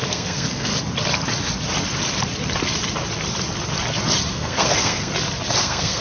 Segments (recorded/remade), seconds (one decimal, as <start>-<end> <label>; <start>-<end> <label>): 0.0-0.7 remade; 0.7-4.3 recorded; 4.3-5.1 remade; 5.1-5.6 recorded; 5.6-6.0 remade